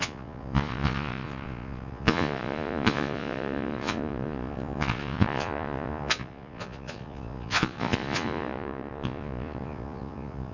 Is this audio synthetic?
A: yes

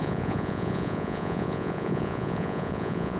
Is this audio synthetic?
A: yes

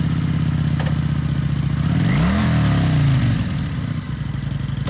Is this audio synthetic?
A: no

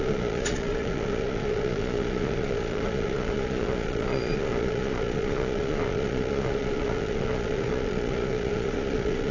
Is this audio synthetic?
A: yes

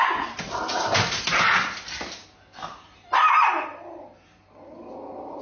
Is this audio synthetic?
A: no